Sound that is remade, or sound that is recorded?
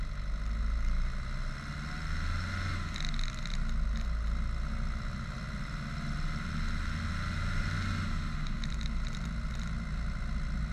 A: recorded